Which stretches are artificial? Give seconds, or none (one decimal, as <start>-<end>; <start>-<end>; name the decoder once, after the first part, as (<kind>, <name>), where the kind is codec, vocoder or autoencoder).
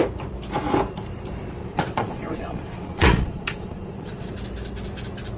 1.6-4.3 (vocoder, Vocos)